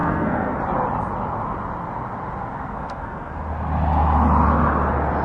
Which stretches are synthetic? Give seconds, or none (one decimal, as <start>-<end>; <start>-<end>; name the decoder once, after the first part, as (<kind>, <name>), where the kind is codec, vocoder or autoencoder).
0.0-0.6 (codec, SNAC); 2.4-3.3